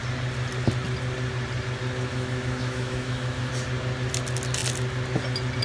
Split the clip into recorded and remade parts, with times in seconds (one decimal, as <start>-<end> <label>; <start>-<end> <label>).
0.0-2.1 recorded; 2.1-3.5 remade; 3.5-5.6 recorded